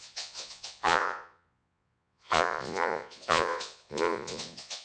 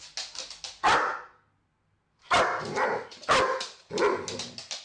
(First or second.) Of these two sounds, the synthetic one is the first